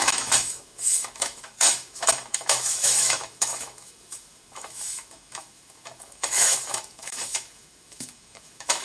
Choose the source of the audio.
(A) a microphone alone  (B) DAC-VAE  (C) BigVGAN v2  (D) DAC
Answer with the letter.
B